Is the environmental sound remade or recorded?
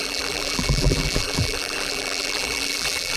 remade